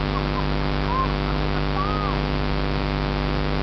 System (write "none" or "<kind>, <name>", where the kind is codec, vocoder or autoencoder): none